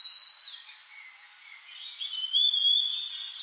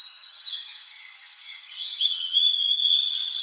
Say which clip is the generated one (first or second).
second